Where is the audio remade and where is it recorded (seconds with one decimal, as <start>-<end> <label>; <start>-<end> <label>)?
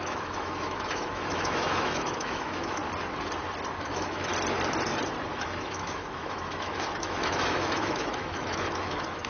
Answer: 0.0-2.8 remade; 2.8-3.8 recorded; 3.8-4.3 remade; 4.3-5.3 recorded; 5.3-9.3 remade